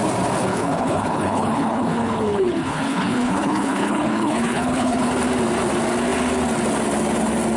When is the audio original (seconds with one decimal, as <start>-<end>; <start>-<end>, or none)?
0.0-0.5; 5.1-7.6